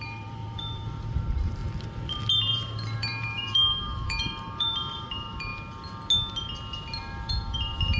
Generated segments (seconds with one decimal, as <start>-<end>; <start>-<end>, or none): 0.0-1.6; 2.3-5.5; 7.0-8.0